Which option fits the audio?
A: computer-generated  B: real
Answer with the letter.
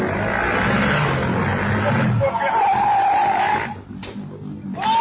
B